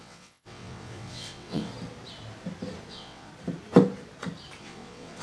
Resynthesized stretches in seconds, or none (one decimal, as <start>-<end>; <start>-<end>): 0.0-1.7; 2.9-3.3; 4.6-5.2